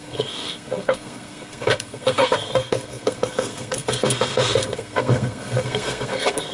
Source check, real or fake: fake